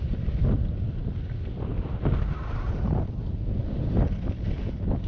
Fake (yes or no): no